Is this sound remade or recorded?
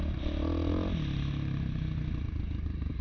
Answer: recorded